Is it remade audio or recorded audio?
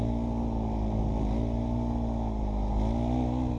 recorded